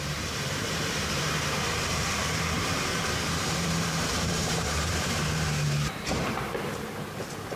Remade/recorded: remade